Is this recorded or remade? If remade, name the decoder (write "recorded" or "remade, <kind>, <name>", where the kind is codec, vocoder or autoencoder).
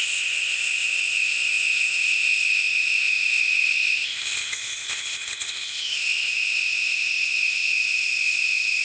remade, codec, ZipCodec